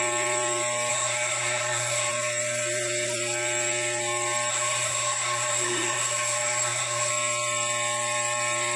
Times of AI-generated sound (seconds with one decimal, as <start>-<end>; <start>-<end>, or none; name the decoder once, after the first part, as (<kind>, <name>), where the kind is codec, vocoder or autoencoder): 0.9-2.1 (codec, SNAC); 4.5-7.1